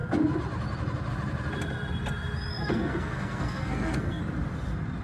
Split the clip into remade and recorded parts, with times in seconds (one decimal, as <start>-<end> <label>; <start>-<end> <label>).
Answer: 0.0-2.5 recorded; 2.5-4.2 remade; 4.2-5.0 recorded